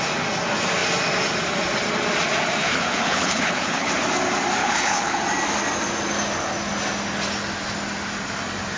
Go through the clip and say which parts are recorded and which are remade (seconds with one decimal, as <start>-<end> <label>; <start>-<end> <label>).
0.0-2.6 recorded; 2.6-3.9 remade; 3.9-4.6 recorded; 4.6-5.2 remade; 5.2-8.8 recorded